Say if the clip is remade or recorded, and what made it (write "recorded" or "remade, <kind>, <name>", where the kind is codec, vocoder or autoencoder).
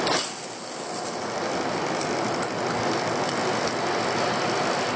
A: recorded